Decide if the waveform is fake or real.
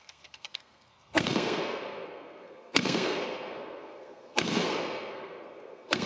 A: fake